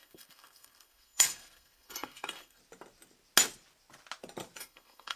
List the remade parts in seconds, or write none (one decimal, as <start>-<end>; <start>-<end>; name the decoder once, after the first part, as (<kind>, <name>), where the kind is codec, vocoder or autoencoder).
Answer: 0.0-2.6 (codec, SNAC); 4.6-5.2